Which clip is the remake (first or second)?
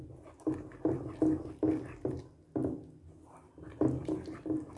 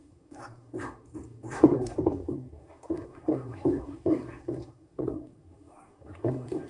second